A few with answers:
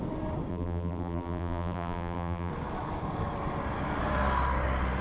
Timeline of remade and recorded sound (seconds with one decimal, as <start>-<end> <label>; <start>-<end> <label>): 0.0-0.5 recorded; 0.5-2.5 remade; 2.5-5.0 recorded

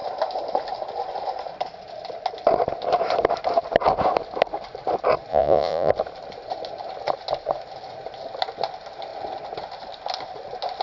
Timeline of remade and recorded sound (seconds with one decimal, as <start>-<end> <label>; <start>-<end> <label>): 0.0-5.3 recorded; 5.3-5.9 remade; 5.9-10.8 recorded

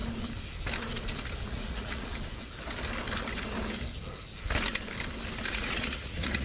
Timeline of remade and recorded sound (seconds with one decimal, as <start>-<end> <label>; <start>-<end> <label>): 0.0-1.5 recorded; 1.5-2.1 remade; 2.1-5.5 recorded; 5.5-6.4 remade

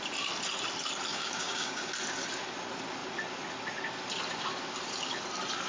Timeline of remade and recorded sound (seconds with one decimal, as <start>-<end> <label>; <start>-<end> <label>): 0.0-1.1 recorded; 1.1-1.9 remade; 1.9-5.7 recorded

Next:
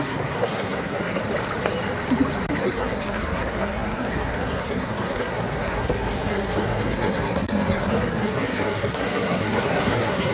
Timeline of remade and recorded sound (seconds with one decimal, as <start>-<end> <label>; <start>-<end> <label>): 0.0-1.2 remade; 1.2-2.6 recorded; 2.6-10.3 remade

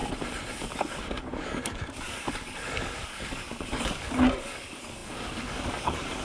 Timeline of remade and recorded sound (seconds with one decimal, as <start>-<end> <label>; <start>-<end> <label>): 0.0-0.5 recorded; 0.5-6.2 remade